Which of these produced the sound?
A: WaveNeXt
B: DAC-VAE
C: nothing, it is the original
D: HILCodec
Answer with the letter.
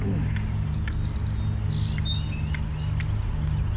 C